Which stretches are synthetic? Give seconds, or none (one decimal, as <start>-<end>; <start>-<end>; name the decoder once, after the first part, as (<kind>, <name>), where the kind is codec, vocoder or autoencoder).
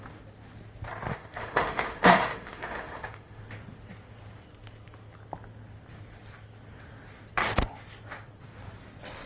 1.1-3.4 (autoencoder, DAC-VAE)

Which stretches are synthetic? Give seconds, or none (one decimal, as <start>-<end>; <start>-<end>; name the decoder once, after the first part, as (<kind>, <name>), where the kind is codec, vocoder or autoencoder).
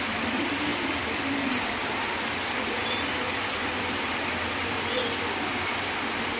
none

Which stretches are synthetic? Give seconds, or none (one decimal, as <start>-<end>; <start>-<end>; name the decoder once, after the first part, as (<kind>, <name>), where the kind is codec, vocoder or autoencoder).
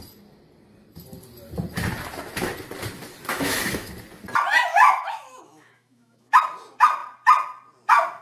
3.3-3.9 (autoencoder, DAC-VAE); 4.7-6.4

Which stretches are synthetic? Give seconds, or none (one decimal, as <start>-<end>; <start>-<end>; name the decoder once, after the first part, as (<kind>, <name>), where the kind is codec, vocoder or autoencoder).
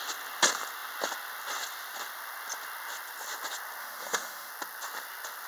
3.8-4.5 (autoencoder, DAC-VAE)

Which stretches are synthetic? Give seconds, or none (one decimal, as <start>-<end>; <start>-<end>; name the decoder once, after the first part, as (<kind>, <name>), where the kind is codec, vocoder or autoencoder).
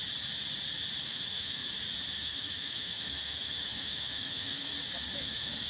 1.1-1.6 (autoencoder, DAC-VAE); 2.1-4.7; 5.2-5.7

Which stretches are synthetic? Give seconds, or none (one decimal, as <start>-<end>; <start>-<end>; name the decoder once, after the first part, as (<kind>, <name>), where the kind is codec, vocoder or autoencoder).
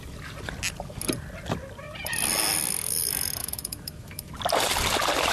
3.4-4.3 (autoencoder, DAC-VAE)